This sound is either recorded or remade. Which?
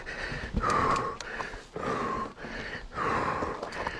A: recorded